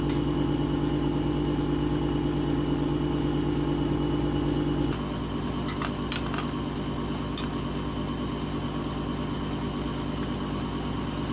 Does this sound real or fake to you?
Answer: real